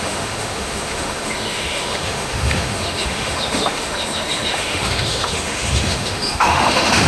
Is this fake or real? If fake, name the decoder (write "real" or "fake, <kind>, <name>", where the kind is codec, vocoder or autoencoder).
fake, autoencoder, DAC-VAE